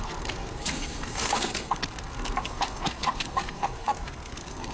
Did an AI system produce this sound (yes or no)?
yes